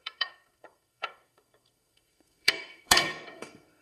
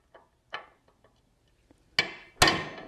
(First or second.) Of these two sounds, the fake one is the first